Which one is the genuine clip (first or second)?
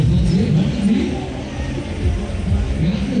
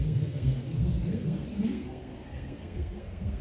first